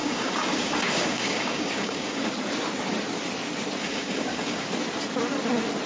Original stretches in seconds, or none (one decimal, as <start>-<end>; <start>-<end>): 2.3-3.8; 4.7-5.9